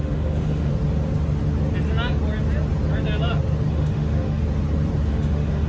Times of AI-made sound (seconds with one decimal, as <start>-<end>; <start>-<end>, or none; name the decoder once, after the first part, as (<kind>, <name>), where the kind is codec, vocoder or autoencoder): 0.0-0.7 (autoencoder, DAC-VAE); 3.7-4.4; 5.1-5.7